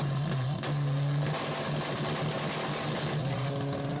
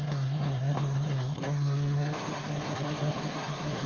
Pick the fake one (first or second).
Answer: second